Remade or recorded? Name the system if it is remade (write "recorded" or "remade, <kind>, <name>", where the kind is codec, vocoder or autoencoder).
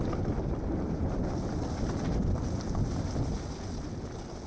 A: recorded